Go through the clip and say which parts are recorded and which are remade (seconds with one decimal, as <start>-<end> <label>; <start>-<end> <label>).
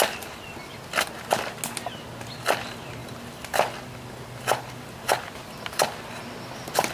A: 0.0-0.5 remade; 0.5-3.0 recorded; 3.0-5.2 remade; 5.2-6.9 recorded